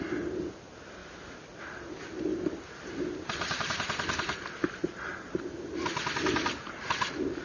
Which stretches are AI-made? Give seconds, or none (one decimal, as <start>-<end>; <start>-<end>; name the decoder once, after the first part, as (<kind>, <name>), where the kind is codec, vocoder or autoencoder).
2.3-5.1 (vocoder, BigVGAN v2)